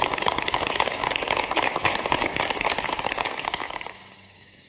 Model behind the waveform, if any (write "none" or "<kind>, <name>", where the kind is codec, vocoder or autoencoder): codec, DAC